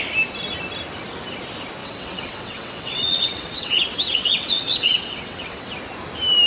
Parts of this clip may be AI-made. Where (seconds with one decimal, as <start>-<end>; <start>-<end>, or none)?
1.8-5.7